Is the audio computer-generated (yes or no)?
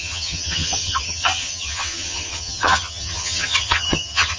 yes